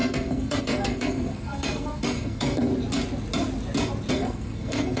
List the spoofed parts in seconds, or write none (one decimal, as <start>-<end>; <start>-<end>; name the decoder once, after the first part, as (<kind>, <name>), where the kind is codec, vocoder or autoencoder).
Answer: 0.0-2.7 (codec, SNAC); 4.1-5.0